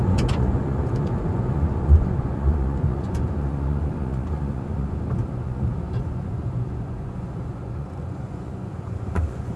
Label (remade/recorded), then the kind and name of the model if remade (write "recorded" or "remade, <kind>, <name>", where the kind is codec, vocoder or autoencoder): remade, vocoder, Vocos